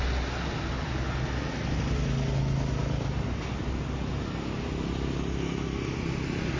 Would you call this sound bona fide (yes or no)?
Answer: yes